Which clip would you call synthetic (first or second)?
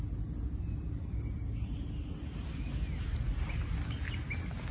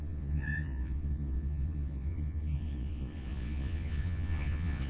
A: second